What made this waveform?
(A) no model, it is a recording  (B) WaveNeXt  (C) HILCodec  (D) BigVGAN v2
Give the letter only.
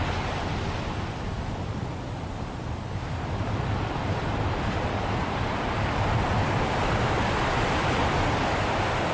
D